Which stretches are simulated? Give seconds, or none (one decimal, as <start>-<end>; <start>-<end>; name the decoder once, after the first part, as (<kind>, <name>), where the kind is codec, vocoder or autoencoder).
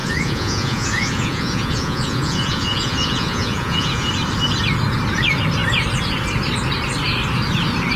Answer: 0.0-4.1 (vocoder, Vocos)